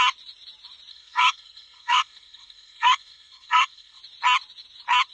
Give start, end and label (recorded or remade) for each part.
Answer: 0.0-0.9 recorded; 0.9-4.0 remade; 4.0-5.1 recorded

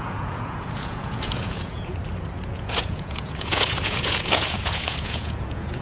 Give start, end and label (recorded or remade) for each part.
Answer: 0.0-2.0 remade; 2.0-2.5 recorded; 2.5-5.8 remade

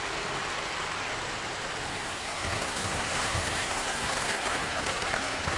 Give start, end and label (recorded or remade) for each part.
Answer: 0.0-1.9 recorded; 1.9-5.6 remade

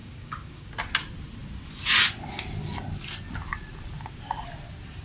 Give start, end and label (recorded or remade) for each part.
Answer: 0.0-0.7 remade; 0.7-5.0 recorded

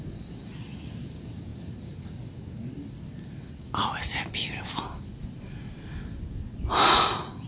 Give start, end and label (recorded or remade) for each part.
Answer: 0.0-7.5 recorded

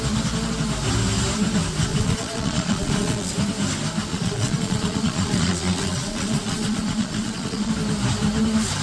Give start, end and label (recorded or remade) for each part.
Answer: 0.0-1.9 recorded; 1.9-3.3 remade; 3.3-4.1 recorded; 4.1-7.7 remade; 7.7-8.8 recorded

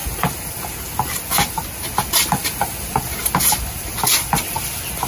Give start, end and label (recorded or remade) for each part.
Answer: 0.0-5.1 recorded